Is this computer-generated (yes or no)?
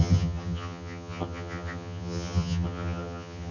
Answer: yes